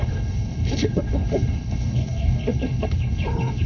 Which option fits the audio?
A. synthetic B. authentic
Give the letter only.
A